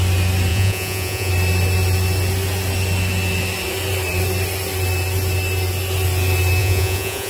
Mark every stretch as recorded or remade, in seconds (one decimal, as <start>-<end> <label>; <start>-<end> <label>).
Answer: 0.0-0.5 recorded; 0.5-1.3 remade; 1.3-6.6 recorded; 6.6-7.3 remade